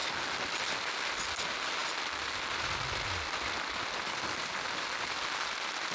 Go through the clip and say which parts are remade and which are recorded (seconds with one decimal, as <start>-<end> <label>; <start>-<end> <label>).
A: 0.0-5.9 recorded